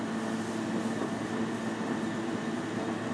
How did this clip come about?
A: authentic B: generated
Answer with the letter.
A